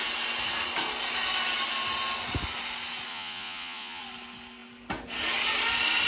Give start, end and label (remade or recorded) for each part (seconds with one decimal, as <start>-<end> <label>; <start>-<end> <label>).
0.0-3.1 recorded; 3.1-4.0 remade; 4.0-6.1 recorded